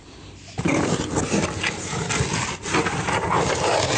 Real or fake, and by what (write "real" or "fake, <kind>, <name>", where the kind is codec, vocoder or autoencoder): real